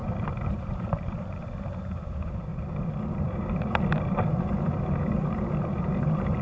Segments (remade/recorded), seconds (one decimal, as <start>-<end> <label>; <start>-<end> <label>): 0.0-6.4 remade